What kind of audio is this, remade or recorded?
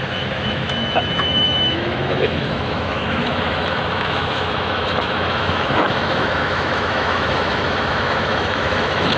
remade